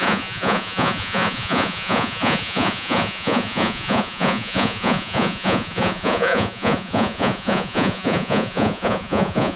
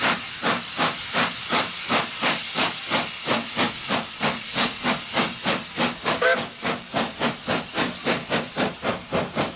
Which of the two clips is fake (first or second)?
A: first